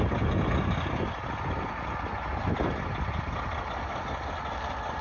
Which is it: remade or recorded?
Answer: recorded